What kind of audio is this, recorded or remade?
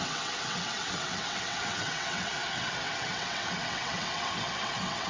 remade